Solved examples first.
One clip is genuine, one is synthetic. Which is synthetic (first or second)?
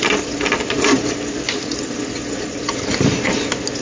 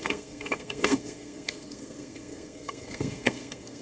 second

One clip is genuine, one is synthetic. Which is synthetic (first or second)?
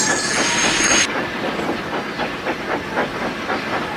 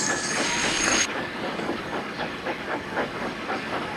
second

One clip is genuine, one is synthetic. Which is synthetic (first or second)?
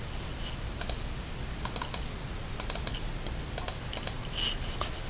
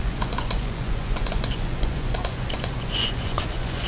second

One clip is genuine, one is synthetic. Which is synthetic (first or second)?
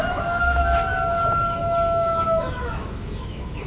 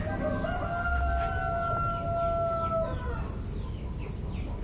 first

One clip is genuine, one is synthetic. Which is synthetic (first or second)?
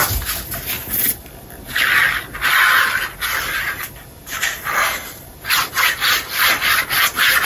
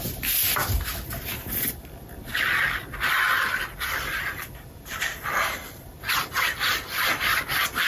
second